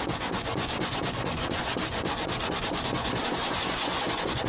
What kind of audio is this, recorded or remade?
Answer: remade